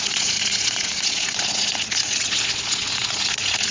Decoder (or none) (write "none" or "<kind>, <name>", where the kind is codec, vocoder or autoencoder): vocoder, Vocos